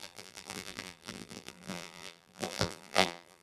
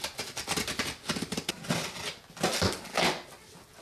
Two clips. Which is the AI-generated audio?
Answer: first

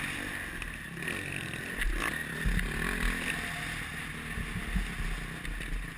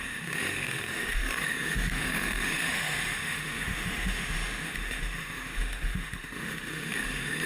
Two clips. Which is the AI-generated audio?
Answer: second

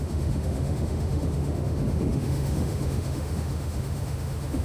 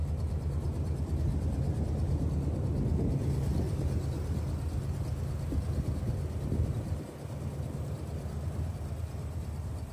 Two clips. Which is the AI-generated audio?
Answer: first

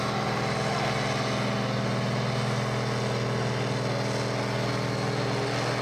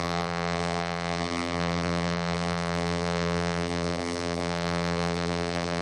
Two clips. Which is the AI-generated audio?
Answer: second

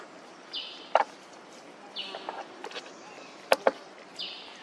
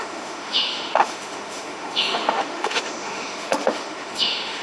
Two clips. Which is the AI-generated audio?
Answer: second